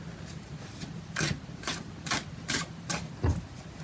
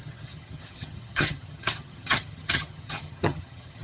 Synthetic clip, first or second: second